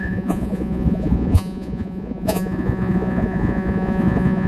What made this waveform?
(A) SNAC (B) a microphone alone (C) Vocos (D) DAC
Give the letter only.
C